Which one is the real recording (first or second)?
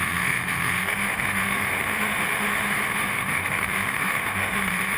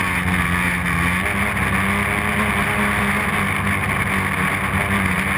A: second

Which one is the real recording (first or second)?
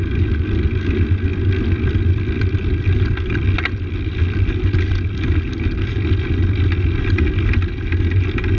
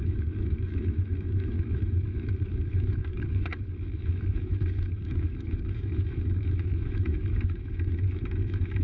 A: first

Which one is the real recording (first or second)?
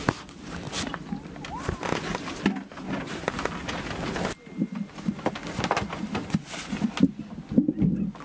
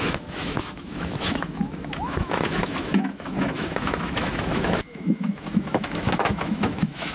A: first